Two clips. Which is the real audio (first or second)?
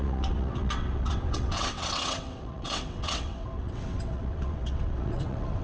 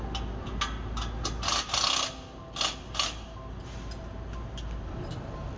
second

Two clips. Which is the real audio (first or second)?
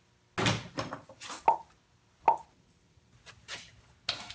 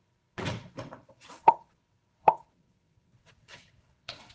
first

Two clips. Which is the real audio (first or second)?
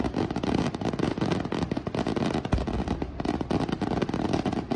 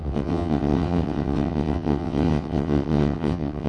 first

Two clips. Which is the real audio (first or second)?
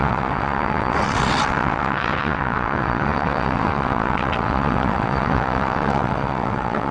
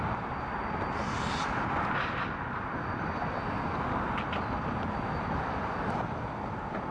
second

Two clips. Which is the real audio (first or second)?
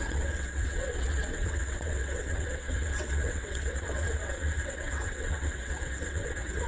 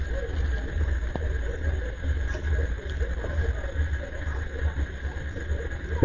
second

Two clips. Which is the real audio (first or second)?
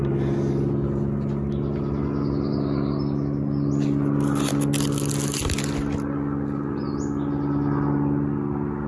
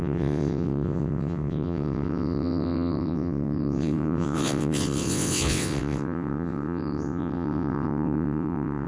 first